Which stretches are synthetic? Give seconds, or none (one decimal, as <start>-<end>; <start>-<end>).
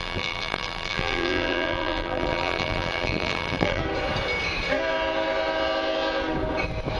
0.0-3.8